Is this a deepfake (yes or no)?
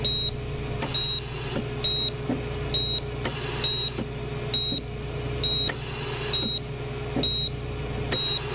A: no